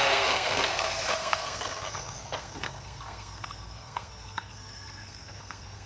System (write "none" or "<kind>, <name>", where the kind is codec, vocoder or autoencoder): codec, SNAC